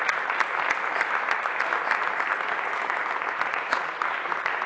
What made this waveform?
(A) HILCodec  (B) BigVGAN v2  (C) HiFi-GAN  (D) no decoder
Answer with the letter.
D